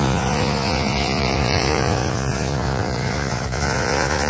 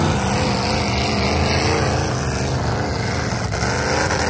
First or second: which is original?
second